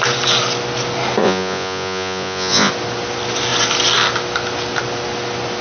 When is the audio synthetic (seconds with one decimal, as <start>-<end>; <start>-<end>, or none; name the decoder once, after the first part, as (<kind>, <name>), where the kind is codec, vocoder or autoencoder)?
1.2-2.7 (vocoder, Vocos)